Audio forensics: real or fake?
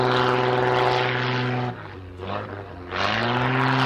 real